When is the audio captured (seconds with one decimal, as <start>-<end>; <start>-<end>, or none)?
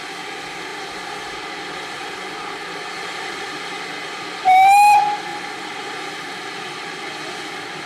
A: 0.0-0.7; 3.6-5.3; 6.9-7.9